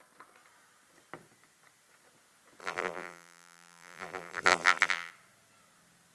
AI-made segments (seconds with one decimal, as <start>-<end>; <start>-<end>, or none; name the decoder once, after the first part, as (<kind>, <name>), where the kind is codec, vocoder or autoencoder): 2.6-5.1 (vocoder, BigVGAN v2)